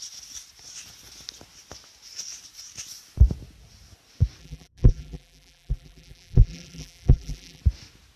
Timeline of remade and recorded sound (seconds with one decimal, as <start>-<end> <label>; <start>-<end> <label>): 0.0-4.4 recorded; 4.4-7.6 remade; 7.6-8.2 recorded